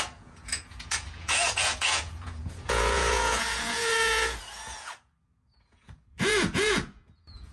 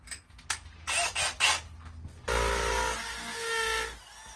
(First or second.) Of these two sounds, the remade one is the first